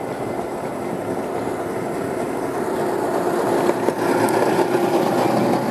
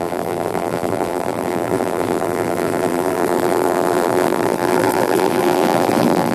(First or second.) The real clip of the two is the first